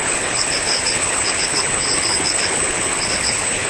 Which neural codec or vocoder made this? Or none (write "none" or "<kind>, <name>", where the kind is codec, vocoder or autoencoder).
codec, HILCodec